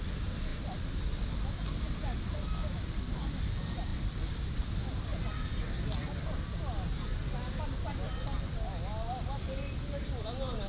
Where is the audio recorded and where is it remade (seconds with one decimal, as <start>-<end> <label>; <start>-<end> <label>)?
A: 0.0-10.7 recorded